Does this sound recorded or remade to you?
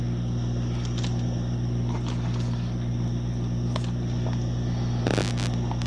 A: recorded